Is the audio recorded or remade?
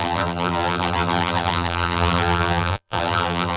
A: remade